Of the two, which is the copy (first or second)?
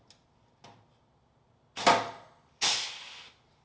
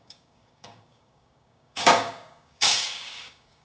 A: second